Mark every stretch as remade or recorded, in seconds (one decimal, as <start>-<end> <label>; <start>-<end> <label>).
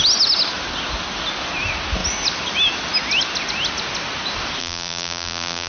0.0-4.6 recorded; 4.6-5.7 remade